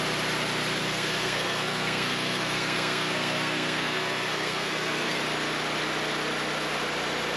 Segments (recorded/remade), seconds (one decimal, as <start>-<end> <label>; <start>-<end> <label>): 0.0-0.8 recorded; 0.8-5.2 remade; 5.2-7.4 recorded